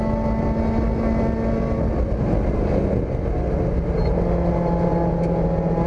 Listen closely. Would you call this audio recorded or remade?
recorded